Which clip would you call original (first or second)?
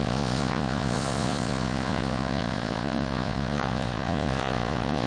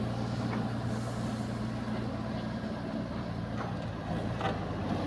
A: second